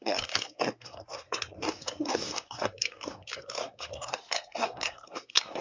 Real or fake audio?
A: fake